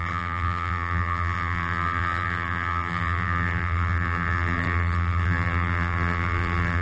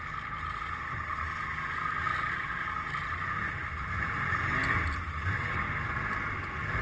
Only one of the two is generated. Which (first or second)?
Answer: first